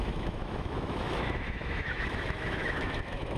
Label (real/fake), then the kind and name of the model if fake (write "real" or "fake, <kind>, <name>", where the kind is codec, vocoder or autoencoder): fake, autoencoder, DAC-VAE